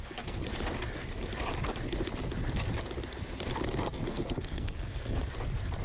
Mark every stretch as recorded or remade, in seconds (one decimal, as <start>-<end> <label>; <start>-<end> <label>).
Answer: 0.0-0.4 remade; 0.4-3.9 recorded; 3.9-5.2 remade; 5.2-5.8 recorded